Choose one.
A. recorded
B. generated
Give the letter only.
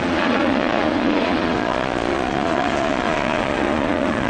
B